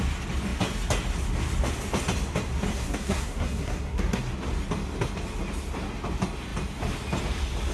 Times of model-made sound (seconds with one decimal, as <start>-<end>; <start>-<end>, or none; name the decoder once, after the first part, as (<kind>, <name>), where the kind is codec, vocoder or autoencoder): 2.7-4.2 (codec, SNAC)